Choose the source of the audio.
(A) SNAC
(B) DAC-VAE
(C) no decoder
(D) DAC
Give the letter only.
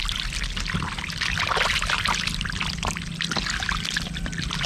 C